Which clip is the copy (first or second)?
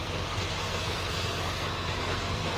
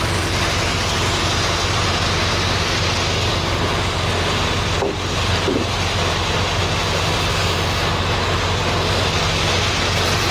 first